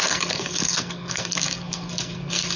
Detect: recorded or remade remade